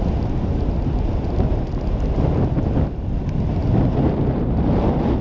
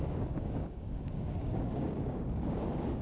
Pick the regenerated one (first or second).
second